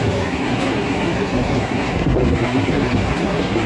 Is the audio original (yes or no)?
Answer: no